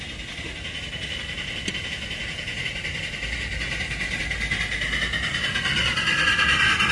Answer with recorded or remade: recorded